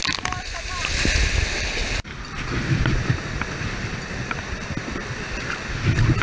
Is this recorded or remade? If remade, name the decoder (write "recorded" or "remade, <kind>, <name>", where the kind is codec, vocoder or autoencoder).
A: recorded